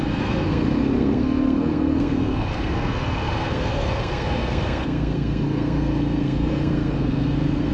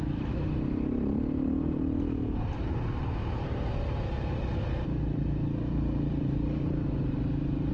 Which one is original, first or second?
second